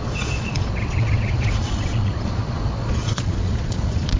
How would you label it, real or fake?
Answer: fake